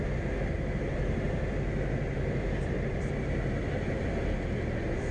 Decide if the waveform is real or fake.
real